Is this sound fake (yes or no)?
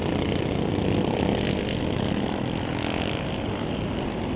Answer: no